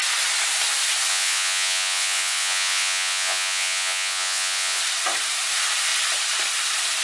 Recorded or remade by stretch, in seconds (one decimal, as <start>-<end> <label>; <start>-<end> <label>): 0.0-1.1 recorded; 1.1-4.8 remade; 4.8-7.0 recorded